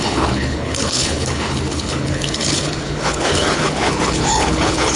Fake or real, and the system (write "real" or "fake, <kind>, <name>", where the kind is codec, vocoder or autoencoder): fake, codec, HILCodec